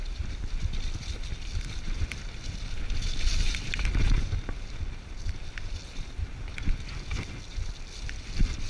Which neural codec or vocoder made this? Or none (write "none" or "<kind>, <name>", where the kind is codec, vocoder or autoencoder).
none